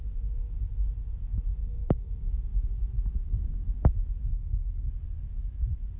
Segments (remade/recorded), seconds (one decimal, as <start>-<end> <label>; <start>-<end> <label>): 0.0-1.6 recorded; 1.6-2.3 remade; 2.3-4.3 recorded; 4.3-4.9 remade; 4.9-6.0 recorded